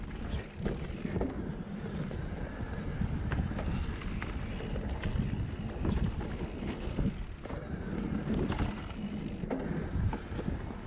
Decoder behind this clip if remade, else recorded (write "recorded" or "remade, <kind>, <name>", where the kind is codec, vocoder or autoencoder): recorded